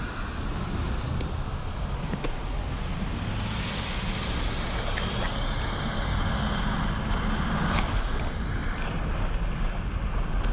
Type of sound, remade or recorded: recorded